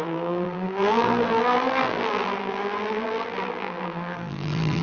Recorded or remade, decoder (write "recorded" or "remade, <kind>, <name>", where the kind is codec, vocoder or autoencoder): remade, vocoder, BigVGAN v2